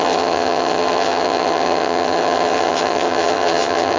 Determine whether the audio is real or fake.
fake